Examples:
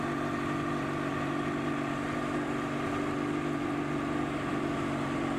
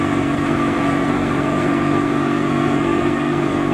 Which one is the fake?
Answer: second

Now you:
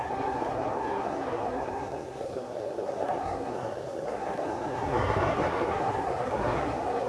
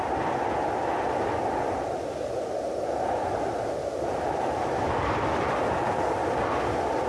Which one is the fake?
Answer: first